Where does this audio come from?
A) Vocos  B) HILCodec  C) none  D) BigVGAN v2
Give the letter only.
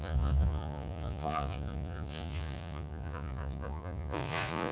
A